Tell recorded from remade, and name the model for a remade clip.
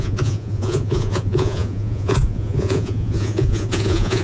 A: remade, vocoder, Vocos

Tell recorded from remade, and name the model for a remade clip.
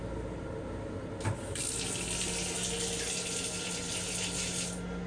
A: recorded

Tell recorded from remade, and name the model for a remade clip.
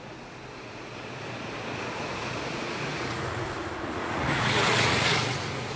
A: remade, vocoder, Vocos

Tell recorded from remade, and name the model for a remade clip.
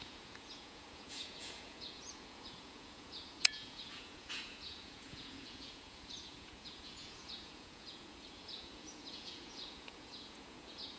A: remade, vocoder, Vocos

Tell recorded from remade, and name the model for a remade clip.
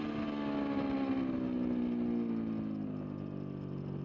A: recorded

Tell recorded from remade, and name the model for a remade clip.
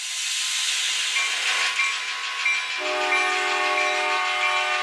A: recorded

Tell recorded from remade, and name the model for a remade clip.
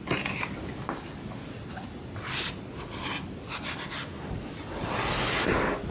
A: recorded